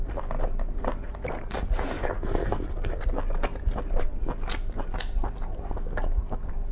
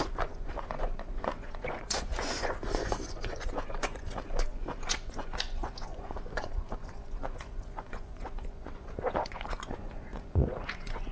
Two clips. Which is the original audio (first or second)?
first